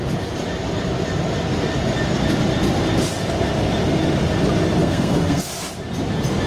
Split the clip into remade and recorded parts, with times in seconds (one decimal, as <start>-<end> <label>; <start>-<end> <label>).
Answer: 0.0-4.8 recorded; 4.8-5.5 remade; 5.5-6.5 recorded